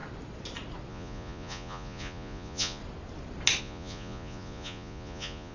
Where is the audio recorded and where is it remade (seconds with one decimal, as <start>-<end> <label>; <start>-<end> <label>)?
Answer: 0.0-0.9 recorded; 0.9-2.8 remade; 2.8-3.6 recorded; 3.6-5.5 remade